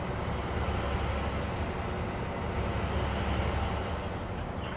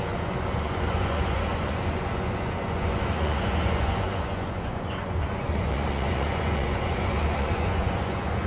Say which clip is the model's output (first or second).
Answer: second